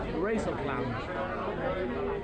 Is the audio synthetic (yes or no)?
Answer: no